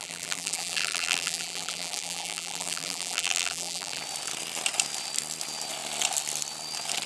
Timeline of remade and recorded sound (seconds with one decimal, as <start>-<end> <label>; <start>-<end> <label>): 0.0-4.0 remade; 4.0-7.1 recorded